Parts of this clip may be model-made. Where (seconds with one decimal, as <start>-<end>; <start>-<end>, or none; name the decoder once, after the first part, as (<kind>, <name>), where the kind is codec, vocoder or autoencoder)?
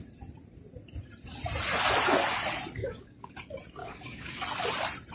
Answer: 2.8-3.3 (codec, DAC); 3.8-4.4